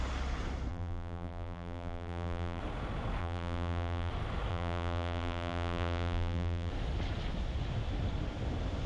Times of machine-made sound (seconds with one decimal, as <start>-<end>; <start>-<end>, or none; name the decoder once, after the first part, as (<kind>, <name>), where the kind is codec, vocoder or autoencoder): 0.7-2.6 (vocoder, BigVGAN v2); 3.2-4.1; 4.5-6.7